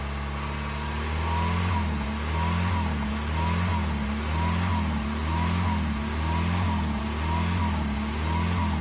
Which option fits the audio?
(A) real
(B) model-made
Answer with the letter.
A